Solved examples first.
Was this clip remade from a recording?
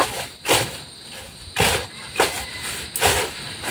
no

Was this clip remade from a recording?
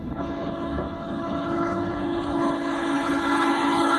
yes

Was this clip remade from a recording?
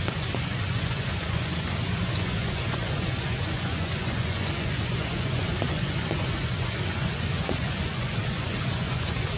yes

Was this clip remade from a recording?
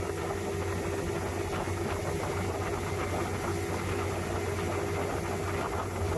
no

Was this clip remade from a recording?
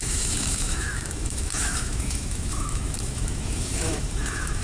yes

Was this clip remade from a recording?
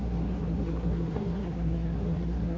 yes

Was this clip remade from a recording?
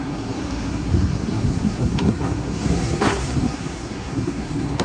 yes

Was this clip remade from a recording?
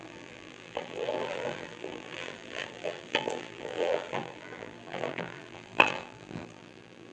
yes